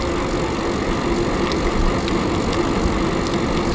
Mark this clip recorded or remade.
recorded